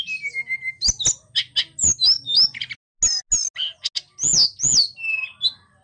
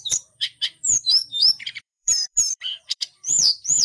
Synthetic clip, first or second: second